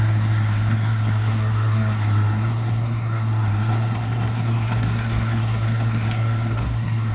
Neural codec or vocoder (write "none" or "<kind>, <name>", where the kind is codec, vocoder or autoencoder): codec, SNAC